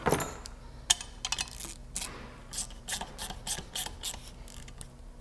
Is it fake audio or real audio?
real